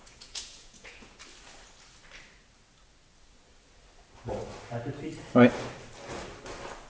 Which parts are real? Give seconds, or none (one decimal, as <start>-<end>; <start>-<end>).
1.2-6.9